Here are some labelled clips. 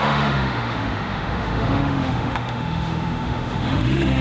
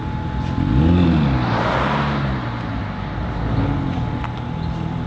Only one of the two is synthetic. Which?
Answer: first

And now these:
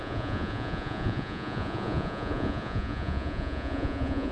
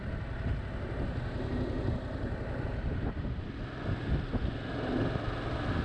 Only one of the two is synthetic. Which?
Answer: first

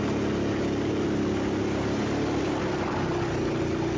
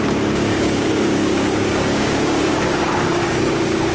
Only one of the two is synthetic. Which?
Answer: second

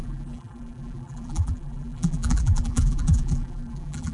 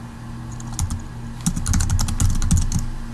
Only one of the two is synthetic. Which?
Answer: first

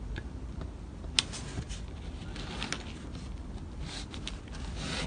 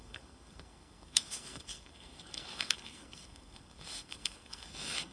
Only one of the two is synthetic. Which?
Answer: second